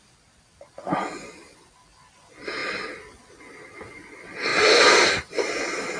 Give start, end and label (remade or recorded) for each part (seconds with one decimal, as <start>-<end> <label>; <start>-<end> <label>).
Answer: 0.0-6.0 recorded